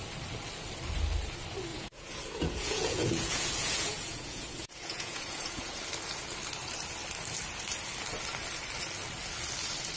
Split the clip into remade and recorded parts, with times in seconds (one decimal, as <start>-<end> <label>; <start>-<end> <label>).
0.0-1.7 recorded; 1.7-5.8 remade; 5.8-10.0 recorded